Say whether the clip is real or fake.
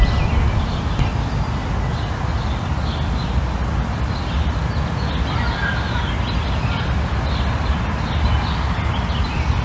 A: real